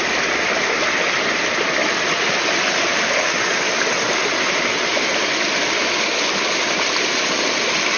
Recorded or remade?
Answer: recorded